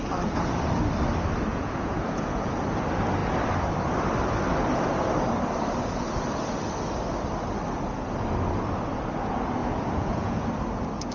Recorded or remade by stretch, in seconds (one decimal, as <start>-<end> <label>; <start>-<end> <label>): 0.0-1.5 recorded; 1.5-2.5 remade; 2.5-9.6 recorded; 9.6-10.5 remade; 10.5-11.1 recorded